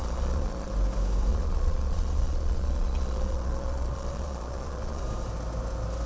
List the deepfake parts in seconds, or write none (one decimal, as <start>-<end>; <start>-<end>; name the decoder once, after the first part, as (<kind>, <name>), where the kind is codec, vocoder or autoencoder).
0.0-0.7 (vocoder, Vocos); 1.3-5.0